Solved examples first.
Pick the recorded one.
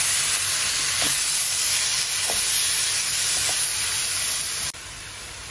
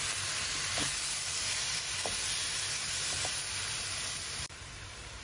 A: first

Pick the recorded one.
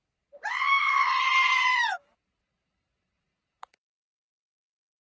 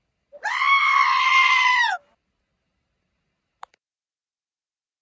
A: second